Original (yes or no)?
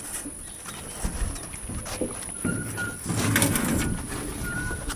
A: yes